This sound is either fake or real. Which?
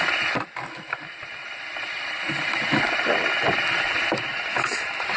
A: real